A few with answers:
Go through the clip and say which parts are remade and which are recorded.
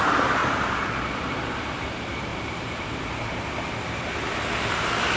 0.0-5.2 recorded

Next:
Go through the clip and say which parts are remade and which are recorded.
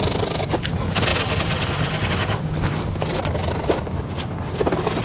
0.0-5.0 recorded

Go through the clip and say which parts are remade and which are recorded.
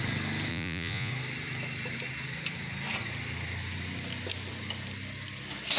0.0-0.5 recorded; 0.5-1.1 remade; 1.1-5.8 recorded